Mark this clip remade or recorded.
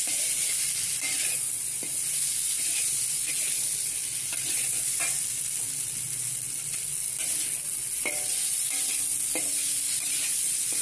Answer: remade